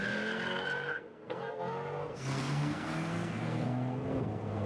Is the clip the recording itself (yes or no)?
no